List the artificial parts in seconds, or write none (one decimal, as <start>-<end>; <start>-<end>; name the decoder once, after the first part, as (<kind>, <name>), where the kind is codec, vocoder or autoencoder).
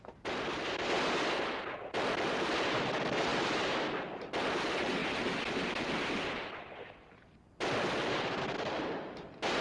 0.0-9.6 (vocoder, BigVGAN v2)